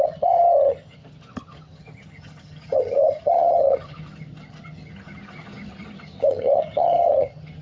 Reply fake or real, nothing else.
fake